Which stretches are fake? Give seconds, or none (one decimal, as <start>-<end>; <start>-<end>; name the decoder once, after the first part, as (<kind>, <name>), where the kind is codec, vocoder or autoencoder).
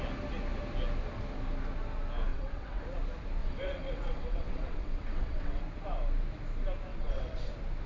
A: 2.3-2.8 (vocoder, WaveNeXt); 3.4-5.6; 6.9-7.5